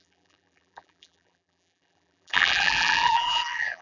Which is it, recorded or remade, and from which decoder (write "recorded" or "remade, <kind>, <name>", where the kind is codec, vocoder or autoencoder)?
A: remade, vocoder, BigVGAN v2